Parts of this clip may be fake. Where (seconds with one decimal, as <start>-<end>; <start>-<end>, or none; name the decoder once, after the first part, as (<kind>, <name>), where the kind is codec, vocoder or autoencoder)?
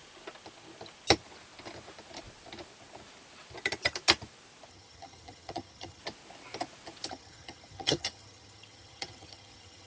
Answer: 4.7-6.0 (vocoder, HiFi-GAN); 7.1-9.9